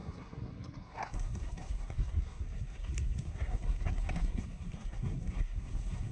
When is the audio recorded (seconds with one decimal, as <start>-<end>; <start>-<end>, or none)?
none